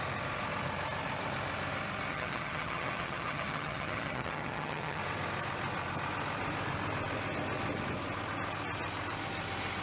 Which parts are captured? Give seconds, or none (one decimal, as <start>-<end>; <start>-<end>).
0.0-2.1; 5.0-9.8

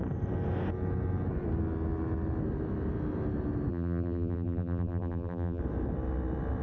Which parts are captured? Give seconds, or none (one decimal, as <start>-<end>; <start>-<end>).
0.0-3.7; 5.6-6.6

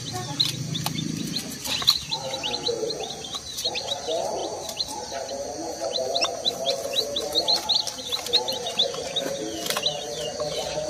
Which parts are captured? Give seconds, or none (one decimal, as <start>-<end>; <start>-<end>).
0.0-10.9

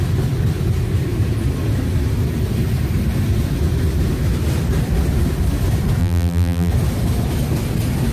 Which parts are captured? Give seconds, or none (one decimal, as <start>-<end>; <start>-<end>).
0.0-6.0; 6.7-8.1

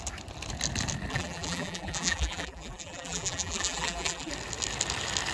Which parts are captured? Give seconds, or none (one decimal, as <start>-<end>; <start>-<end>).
0.0-1.1; 4.3-5.3

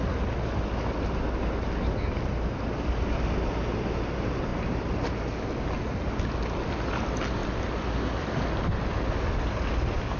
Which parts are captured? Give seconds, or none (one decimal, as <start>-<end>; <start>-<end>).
0.0-10.2

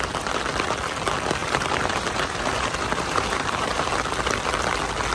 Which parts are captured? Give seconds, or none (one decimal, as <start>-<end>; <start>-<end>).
0.0-1.4; 3.9-5.1

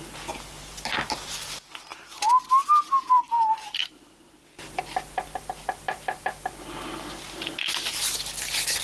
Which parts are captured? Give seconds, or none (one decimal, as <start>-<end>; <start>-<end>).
0.0-8.8